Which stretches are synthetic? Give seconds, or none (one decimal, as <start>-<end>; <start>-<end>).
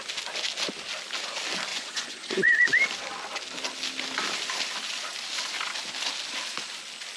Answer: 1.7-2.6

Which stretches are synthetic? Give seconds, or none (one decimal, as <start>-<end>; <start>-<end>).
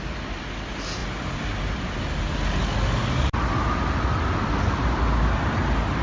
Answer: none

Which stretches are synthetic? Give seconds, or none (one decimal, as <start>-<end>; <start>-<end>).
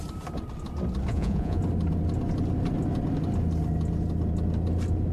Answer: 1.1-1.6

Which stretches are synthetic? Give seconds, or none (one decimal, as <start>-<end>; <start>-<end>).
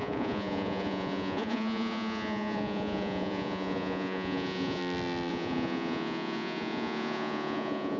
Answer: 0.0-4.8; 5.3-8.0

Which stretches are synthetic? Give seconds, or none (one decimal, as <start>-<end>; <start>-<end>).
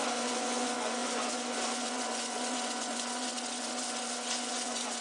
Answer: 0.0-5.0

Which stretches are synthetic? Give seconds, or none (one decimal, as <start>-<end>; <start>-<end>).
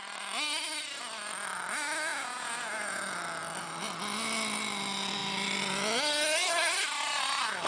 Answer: 2.1-3.0